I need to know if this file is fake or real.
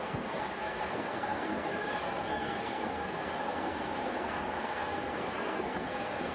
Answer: fake